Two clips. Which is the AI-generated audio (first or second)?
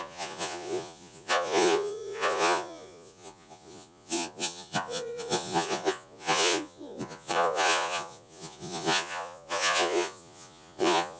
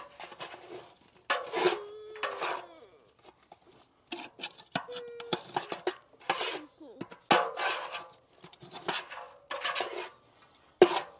first